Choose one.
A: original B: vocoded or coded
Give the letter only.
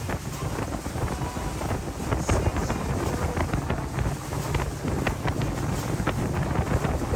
A